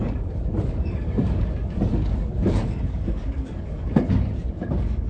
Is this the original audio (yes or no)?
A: no